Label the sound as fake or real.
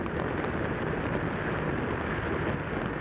real